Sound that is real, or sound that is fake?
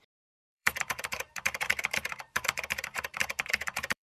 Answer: fake